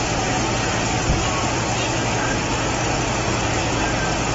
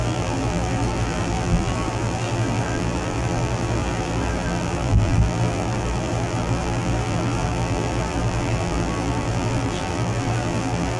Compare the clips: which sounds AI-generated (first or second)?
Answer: second